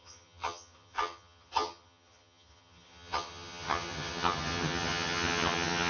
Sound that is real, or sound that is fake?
fake